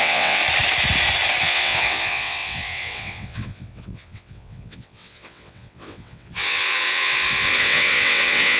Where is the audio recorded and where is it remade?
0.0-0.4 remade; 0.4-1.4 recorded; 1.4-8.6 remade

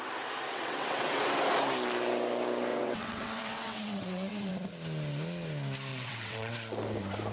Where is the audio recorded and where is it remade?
0.0-0.5 recorded; 0.5-1.2 remade; 1.2-2.7 recorded; 2.7-4.5 remade; 4.5-5.9 recorded; 5.9-6.5 remade; 6.5-7.3 recorded

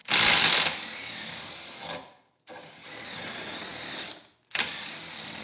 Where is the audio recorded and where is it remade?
0.0-5.4 recorded

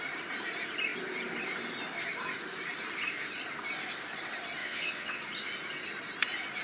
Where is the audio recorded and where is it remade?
0.0-4.6 recorded; 4.6-5.2 remade; 5.2-6.6 recorded

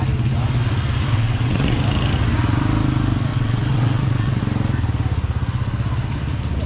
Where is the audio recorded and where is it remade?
0.0-1.1 recorded; 1.1-1.8 remade; 1.8-3.3 recorded; 3.3-4.4 remade; 4.4-6.7 recorded

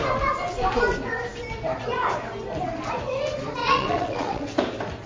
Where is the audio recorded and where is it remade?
0.0-3.6 recorded; 3.6-4.6 remade; 4.6-5.1 recorded

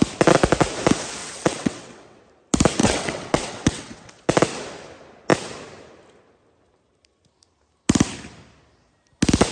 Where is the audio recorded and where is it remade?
0.0-1.2 recorded; 1.2-2.2 remade; 2.2-2.8 recorded; 2.8-4.3 remade; 4.3-9.5 recorded